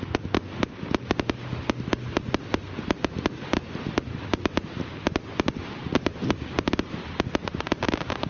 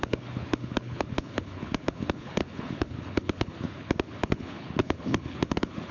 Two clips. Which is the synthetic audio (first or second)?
second